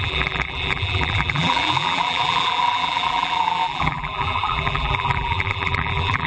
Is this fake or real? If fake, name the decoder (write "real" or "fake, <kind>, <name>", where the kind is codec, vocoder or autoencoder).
fake, vocoder, BigVGAN v2